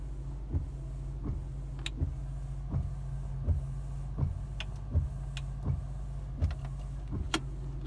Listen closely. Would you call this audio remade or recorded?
recorded